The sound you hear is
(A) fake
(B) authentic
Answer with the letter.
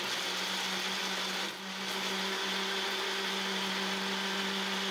B